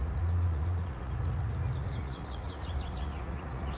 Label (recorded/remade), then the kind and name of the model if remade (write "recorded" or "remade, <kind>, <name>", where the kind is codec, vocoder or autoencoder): remade, vocoder, Vocos